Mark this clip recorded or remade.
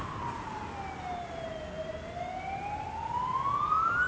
recorded